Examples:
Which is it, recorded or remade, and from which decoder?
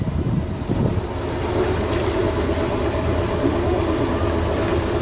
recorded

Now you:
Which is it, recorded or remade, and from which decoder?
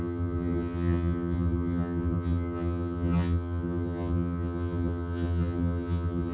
remade, vocoder, HiFi-GAN